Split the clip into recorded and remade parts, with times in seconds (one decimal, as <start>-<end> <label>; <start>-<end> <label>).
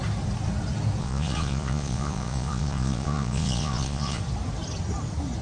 0.0-1.0 recorded; 1.0-4.2 remade; 4.2-5.4 recorded